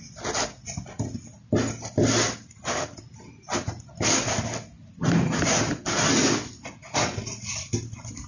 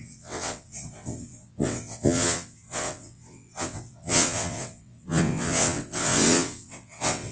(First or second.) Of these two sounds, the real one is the first